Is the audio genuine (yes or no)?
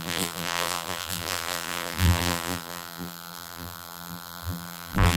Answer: no